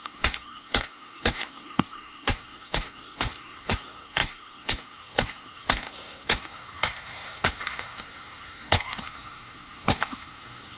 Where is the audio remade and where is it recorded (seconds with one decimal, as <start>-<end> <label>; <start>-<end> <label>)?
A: 0.0-10.8 remade